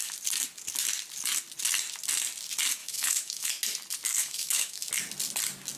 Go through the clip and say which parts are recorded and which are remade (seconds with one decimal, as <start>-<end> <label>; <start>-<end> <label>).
0.0-2.8 recorded; 2.8-3.5 remade; 3.5-4.2 recorded; 4.2-4.9 remade; 4.9-5.8 recorded